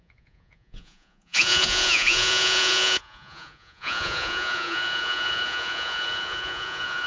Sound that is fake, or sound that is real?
fake